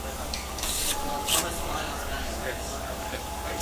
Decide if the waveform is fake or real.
fake